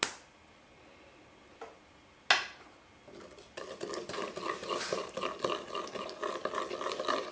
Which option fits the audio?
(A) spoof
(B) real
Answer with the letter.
B